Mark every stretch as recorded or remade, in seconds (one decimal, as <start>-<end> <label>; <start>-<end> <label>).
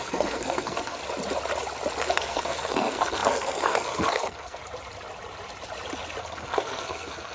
0.0-1.0 remade; 1.0-2.0 recorded; 2.0-4.6 remade; 4.6-6.2 recorded; 6.2-7.3 remade